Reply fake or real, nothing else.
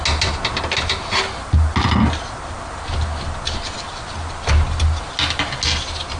real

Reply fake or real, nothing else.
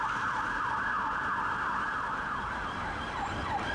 fake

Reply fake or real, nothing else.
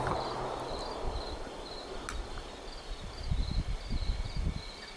real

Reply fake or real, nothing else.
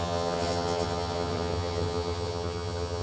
fake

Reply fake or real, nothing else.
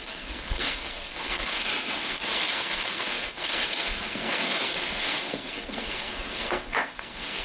fake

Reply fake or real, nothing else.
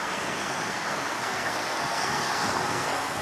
fake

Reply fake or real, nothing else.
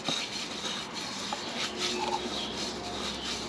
real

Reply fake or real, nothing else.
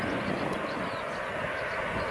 fake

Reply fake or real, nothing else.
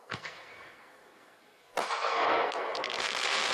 fake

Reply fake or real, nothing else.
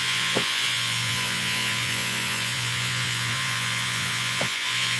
fake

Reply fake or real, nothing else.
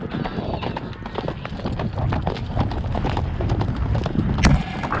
real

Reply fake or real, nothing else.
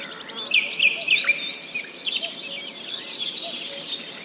real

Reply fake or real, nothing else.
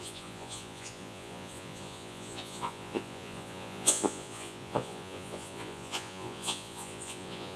fake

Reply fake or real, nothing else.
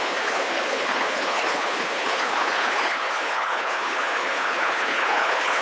fake